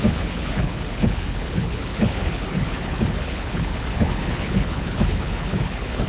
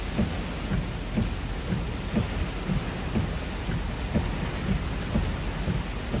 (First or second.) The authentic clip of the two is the second